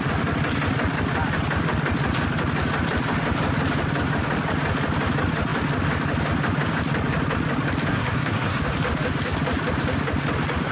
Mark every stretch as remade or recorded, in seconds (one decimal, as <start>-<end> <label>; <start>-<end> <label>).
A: 0.0-7.9 recorded; 7.9-8.6 remade; 8.6-10.7 recorded